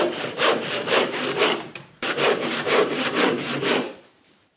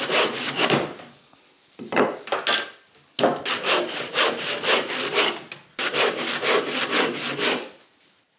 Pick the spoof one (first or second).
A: first